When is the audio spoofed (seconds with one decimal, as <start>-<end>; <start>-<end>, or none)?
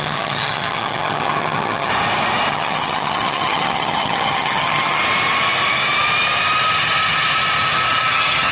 0.0-1.9; 2.5-5.0; 7.9-8.5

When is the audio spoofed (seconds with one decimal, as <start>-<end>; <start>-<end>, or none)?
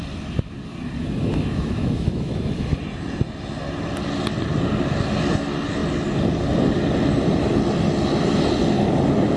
1.0-2.8